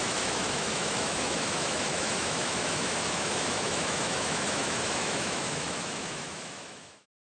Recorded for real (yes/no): no